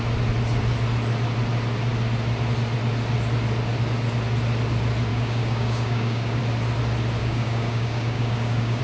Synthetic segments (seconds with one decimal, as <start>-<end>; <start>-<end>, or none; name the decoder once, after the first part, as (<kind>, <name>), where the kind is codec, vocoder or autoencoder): 5.1-6.4 (codec, DAC); 7.2-8.8